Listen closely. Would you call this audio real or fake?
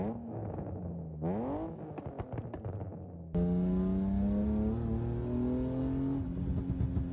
real